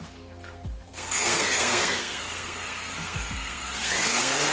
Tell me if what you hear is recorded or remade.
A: remade